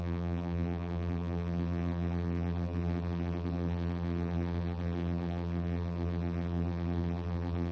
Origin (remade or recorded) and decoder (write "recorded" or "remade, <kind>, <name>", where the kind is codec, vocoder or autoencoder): remade, vocoder, BigVGAN v2